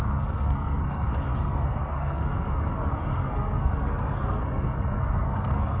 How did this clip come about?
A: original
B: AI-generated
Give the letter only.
B